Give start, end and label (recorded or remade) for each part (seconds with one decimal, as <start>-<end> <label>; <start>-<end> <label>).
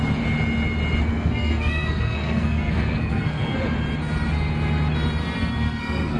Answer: 0.0-1.1 recorded; 1.1-3.6 remade; 3.6-5.2 recorded; 5.2-6.2 remade